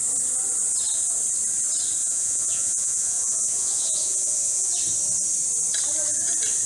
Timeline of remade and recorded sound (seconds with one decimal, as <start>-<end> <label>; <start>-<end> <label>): 0.0-2.0 recorded; 2.0-4.7 remade; 4.7-6.7 recorded